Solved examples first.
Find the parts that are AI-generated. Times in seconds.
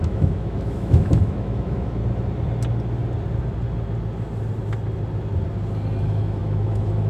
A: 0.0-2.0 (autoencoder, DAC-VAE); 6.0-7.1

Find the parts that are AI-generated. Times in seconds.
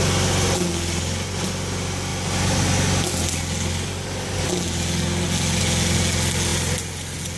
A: none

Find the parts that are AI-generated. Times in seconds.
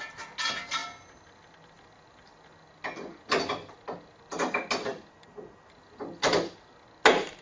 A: none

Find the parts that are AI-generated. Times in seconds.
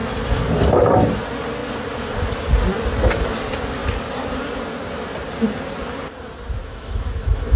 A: 6.6-7.6 (autoencoder, DAC-VAE)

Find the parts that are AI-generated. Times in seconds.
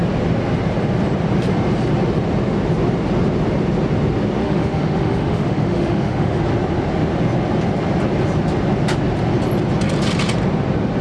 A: 4.4-6.4 (autoencoder, DAC-VAE)